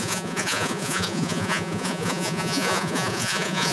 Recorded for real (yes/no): no